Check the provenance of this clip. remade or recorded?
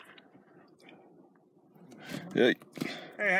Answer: recorded